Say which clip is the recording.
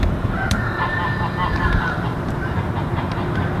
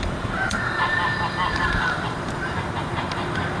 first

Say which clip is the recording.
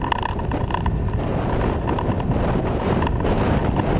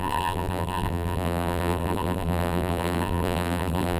first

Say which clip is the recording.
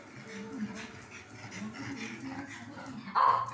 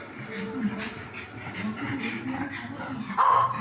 first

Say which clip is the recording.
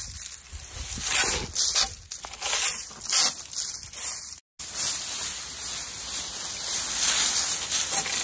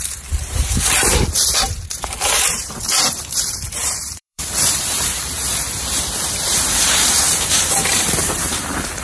first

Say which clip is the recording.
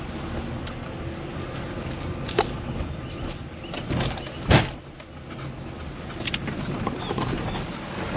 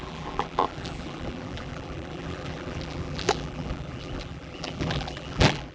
first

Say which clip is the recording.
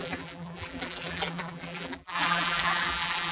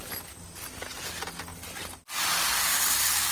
second